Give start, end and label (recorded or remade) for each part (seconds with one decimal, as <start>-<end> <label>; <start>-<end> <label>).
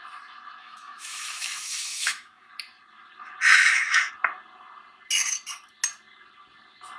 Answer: 0.0-0.6 recorded; 0.6-2.5 remade; 2.5-3.5 recorded; 3.5-4.1 remade; 4.1-7.0 recorded